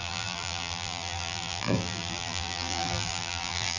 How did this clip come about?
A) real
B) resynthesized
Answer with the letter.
B